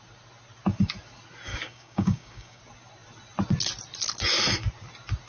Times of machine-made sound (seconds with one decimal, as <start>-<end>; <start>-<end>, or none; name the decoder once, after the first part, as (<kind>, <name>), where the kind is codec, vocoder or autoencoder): 1.5-2.6 (codec, DAC)